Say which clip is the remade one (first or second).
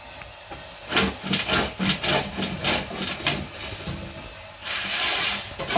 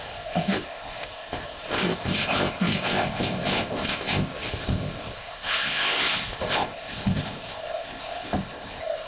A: second